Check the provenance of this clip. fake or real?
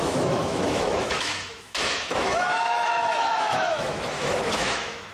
fake